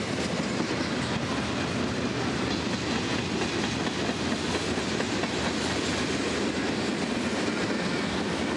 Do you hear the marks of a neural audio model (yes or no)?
no